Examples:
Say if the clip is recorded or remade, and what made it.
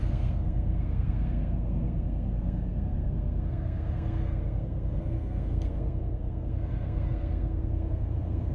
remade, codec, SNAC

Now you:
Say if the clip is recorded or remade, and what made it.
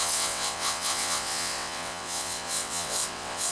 remade, vocoder, WaveNeXt